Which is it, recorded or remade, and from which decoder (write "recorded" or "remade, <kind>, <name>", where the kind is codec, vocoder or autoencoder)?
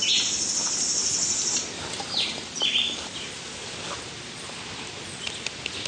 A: recorded